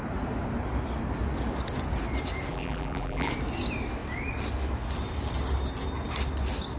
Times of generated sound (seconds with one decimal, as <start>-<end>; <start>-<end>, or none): 2.5-3.3

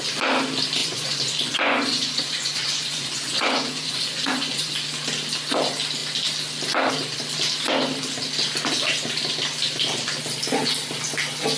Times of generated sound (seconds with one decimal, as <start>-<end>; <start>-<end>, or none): 0.8-4.7

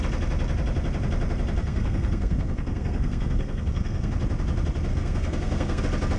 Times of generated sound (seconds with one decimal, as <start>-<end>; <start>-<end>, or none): 1.6-4.1; 4.9-5.8

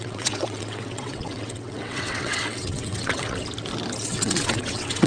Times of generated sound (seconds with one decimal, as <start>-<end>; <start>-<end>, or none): 0.0-3.4; 4.0-5.1